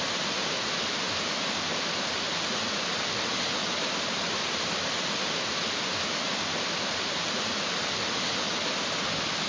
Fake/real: real